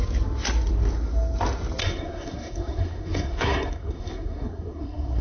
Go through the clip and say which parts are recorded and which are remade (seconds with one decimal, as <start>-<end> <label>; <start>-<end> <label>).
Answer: 0.0-1.8 recorded; 1.8-5.2 remade